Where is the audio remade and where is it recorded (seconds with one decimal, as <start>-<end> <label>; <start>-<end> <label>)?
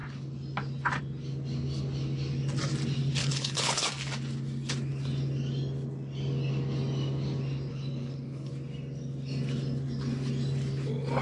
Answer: 0.0-3.2 recorded; 3.2-3.9 remade; 3.9-7.7 recorded; 7.7-8.5 remade; 8.5-11.2 recorded